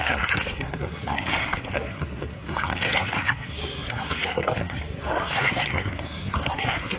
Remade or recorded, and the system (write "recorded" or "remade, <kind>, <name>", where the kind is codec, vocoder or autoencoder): remade, codec, SNAC